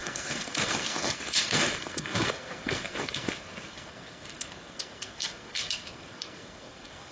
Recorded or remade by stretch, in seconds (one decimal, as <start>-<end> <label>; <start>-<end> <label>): 0.0-7.1 remade